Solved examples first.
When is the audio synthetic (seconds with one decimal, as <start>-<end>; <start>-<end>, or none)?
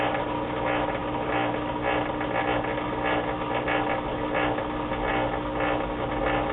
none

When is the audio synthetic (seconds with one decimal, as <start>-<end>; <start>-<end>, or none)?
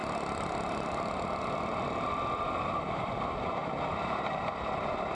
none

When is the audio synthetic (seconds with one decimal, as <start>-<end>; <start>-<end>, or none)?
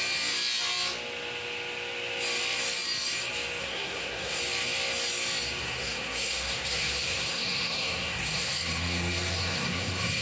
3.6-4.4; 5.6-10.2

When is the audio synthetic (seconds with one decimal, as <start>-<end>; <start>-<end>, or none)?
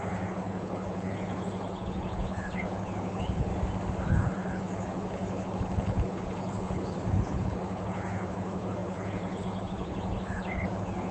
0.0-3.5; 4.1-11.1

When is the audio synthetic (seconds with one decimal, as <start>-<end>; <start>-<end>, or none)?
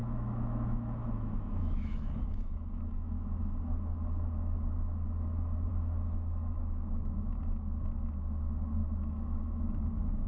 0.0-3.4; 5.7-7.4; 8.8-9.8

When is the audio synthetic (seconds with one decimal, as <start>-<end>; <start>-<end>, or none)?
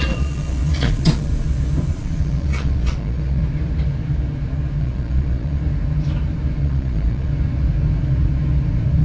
0.0-1.3; 1.9-3.4; 4.8-5.6; 6.6-7.3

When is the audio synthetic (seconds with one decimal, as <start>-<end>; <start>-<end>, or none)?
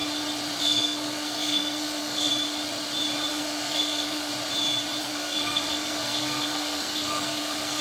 0.6-2.3; 3.3-4.3; 5.0-7.8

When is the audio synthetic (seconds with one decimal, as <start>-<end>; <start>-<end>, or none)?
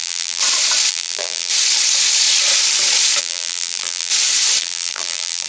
0.0-0.4; 0.9-1.5; 3.2-4.1; 4.6-5.5